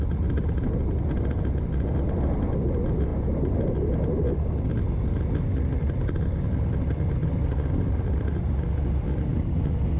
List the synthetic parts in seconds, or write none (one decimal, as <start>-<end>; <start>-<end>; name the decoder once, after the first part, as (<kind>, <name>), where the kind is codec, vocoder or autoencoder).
7.2-7.9 (vocoder, BigVGAN v2); 9.3-10.0